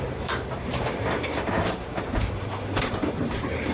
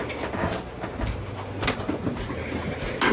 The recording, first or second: second